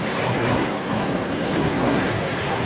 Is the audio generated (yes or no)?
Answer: yes